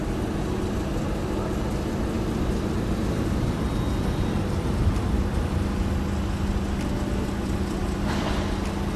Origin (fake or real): real